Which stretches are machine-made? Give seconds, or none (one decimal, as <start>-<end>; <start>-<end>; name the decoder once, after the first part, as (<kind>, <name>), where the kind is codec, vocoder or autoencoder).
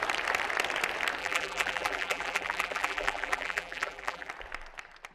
1.2-4.3 (vocoder, BigVGAN v2)